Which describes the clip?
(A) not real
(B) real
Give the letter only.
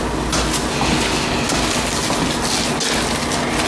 B